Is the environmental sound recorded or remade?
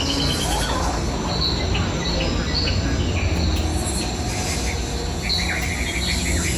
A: recorded